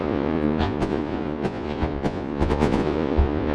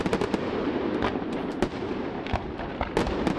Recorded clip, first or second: second